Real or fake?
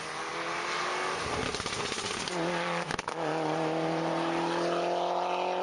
real